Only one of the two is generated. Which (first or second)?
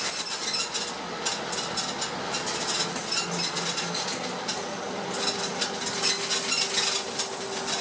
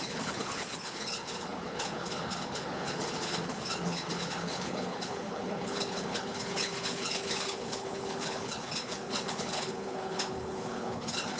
second